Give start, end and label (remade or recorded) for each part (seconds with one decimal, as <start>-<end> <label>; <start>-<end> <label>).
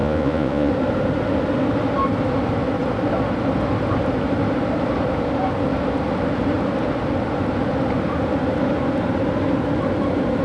0.0-0.7 remade; 0.7-10.4 recorded